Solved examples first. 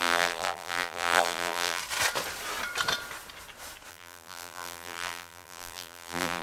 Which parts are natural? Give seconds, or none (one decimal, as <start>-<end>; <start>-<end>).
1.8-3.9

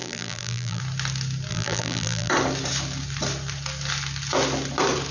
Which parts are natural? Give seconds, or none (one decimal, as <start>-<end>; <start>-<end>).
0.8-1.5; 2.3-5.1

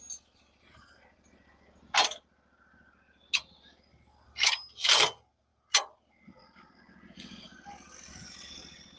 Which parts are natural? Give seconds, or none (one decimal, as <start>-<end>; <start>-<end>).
0.0-9.0